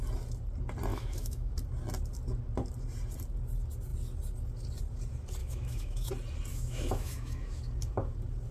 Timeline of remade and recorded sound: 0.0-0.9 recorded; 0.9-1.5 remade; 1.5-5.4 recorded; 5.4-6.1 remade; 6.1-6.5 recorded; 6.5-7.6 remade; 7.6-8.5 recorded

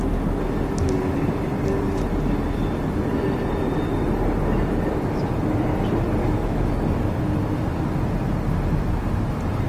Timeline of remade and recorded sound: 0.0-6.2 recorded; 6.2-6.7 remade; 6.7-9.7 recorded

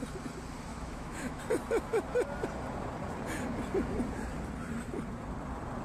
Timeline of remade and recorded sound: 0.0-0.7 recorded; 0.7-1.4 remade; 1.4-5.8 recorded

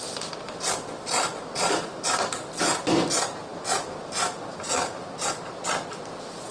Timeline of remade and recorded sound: 0.0-6.5 recorded

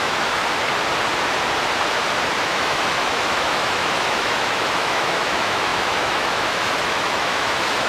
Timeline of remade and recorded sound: 0.0-0.4 remade; 0.4-2.4 recorded; 2.4-7.9 remade

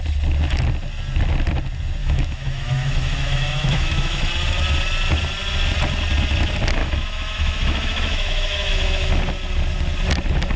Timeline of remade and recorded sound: 0.0-2.0 recorded; 2.0-4.3 remade; 4.3-6.8 recorded; 6.8-9.1 remade; 9.1-10.6 recorded

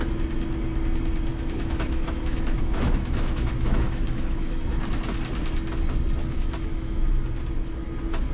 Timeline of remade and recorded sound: 0.0-1.3 recorded; 1.3-4.6 remade; 4.6-6.2 recorded; 6.2-7.1 remade; 7.1-8.3 recorded

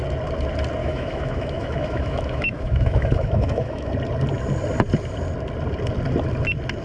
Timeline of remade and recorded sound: 0.0-0.8 recorded; 0.8-3.9 remade; 3.9-6.8 recorded